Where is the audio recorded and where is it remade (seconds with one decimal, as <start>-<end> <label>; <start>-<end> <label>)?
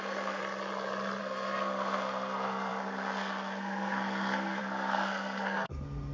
0.0-0.4 remade; 0.4-1.2 recorded; 1.2-6.1 remade